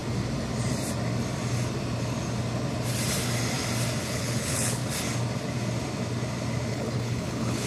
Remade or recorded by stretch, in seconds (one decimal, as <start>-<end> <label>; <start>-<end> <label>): 0.0-4.0 recorded; 4.0-4.8 remade; 4.8-6.7 recorded; 6.7-7.7 remade